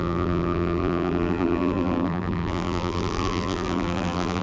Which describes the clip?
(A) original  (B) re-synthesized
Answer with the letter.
B